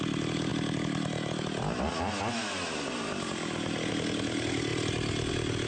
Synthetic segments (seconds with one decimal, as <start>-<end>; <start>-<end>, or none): none